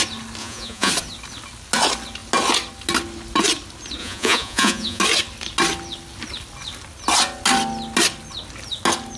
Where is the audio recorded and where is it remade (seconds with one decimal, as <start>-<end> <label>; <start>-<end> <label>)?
0.0-0.4 recorded; 0.4-0.9 remade; 0.9-4.0 recorded; 4.0-5.0 remade; 5.0-9.2 recorded